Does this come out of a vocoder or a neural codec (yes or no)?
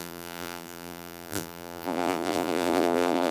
yes